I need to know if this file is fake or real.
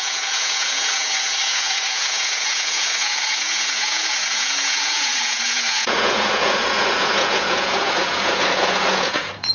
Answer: fake